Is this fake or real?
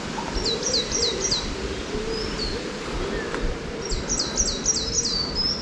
real